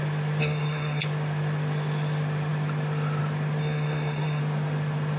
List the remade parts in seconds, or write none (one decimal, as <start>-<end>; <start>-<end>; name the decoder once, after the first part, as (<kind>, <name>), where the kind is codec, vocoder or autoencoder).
0.4-1.0 (codec, SNAC); 3.6-4.4